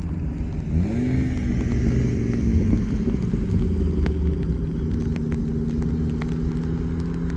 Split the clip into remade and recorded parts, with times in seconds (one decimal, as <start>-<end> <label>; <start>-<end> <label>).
0.0-7.4 recorded